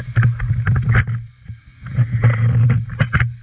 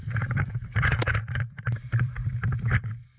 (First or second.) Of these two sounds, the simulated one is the second